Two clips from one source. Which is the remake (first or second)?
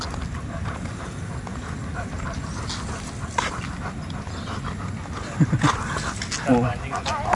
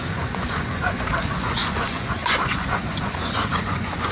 second